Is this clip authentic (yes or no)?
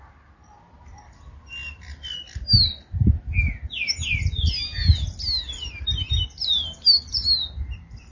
yes